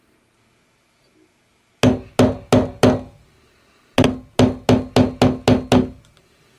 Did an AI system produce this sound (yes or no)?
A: no